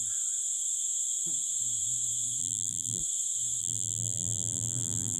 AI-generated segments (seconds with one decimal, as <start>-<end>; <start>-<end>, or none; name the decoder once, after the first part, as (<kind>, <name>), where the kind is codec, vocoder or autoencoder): 2.4-3.0 (vocoder, BigVGAN v2); 3.6-5.2